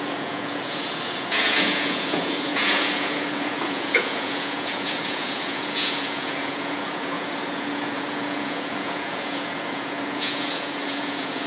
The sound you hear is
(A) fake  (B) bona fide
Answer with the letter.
A